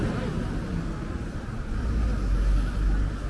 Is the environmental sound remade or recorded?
recorded